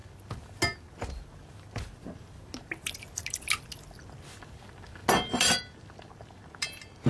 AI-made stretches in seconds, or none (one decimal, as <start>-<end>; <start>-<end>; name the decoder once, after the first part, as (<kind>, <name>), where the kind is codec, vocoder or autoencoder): none

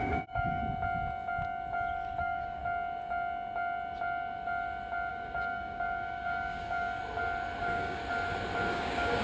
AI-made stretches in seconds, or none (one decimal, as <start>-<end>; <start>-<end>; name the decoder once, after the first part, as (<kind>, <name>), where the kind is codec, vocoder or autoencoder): 0.0-0.6 (codec, DAC); 2.2-2.6; 5.1-7.0; 7.6-8.0; 8.7-9.2

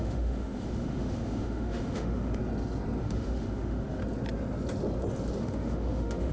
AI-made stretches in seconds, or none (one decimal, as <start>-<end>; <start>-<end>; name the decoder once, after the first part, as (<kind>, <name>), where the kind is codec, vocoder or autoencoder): 0.0-2.4 (autoencoder, DAC-VAE); 3.0-4.0; 5.4-6.3